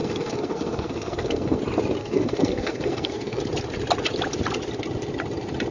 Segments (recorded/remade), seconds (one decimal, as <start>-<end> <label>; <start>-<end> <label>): 0.0-1.6 remade; 1.6-2.0 recorded; 2.0-3.4 remade; 3.4-5.7 recorded